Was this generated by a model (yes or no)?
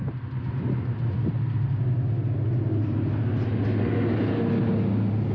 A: no